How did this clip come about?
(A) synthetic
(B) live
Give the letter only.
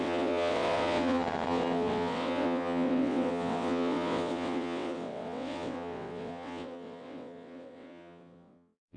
A